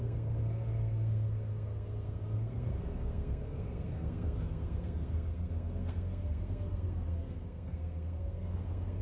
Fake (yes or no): yes